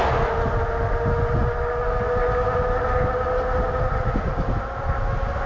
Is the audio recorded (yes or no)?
yes